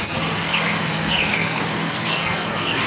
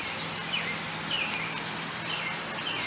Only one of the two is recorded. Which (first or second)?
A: second